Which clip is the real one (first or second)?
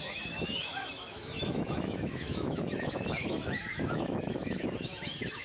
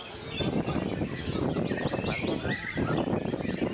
second